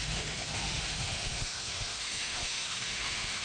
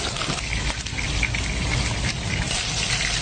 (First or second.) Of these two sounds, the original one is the second